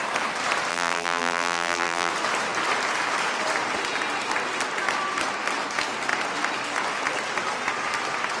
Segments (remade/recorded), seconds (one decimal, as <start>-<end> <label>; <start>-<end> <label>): 0.0-0.7 recorded; 0.7-2.1 remade; 2.1-8.4 recorded